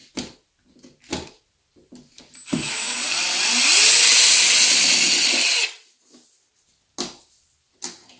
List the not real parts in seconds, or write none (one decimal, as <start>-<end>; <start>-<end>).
none